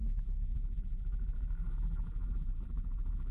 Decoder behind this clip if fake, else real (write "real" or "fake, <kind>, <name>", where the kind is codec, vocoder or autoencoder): fake, vocoder, BigVGAN v2